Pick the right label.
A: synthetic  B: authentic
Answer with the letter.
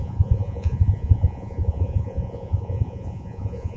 A